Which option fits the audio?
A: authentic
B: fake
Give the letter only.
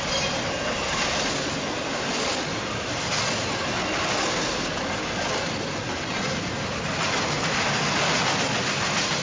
A